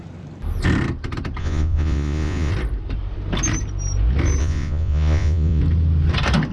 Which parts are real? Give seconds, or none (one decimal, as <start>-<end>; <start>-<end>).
0.0-1.4; 2.5-4.4; 5.6-6.5